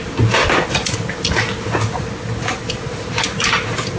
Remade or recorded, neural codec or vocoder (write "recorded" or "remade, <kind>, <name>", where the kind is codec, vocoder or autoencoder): recorded